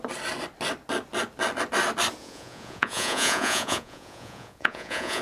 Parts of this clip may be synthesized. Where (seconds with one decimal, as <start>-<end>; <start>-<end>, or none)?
2.2-5.2